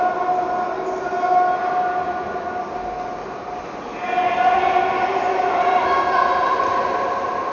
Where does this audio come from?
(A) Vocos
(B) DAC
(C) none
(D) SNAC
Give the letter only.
C